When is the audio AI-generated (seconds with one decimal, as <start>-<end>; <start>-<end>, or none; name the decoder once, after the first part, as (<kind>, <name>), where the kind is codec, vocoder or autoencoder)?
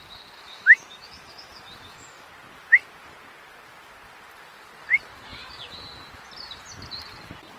0.5-2.3 (autoencoder, DAC-VAE)